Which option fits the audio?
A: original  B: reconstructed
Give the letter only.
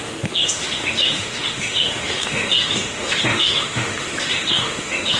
B